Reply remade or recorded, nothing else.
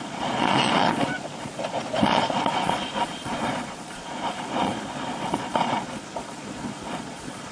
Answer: remade